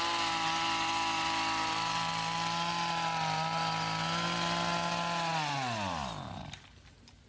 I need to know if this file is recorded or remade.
recorded